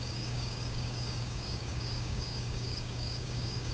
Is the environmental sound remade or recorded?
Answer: remade